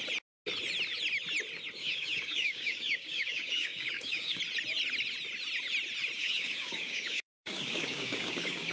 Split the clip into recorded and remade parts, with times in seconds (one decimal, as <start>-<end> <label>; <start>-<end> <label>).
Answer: 0.0-1.8 recorded; 1.8-4.4 remade; 4.4-6.2 recorded; 6.2-8.7 remade